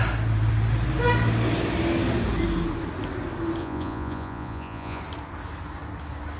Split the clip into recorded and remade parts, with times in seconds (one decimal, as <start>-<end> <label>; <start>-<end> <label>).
0.0-3.6 recorded; 3.6-5.0 remade; 5.0-6.4 recorded